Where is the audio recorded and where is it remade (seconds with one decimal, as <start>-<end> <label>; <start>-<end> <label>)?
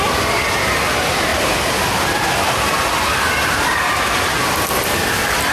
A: 0.0-5.5 recorded